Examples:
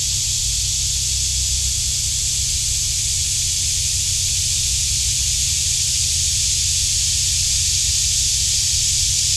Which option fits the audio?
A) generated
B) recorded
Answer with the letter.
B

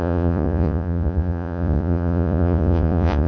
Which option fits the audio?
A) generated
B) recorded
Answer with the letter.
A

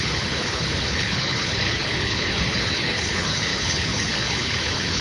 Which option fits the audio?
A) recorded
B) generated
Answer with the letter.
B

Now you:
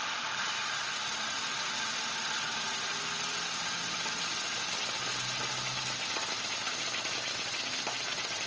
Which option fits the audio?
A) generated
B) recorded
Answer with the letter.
B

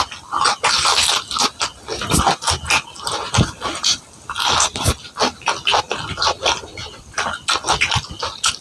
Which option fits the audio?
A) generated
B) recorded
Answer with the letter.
B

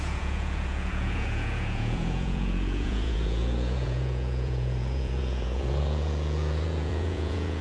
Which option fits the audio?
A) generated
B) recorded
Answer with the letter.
A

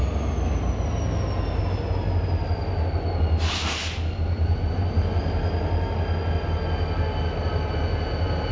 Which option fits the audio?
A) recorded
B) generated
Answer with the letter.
A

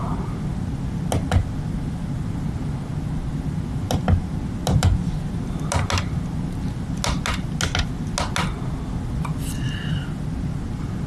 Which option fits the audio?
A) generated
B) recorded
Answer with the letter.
B